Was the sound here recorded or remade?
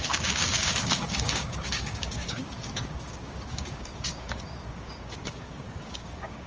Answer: remade